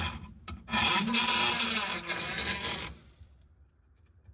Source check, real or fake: fake